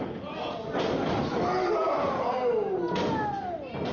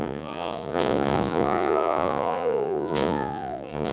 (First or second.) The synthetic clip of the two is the second